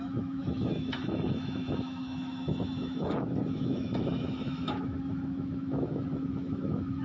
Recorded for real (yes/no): no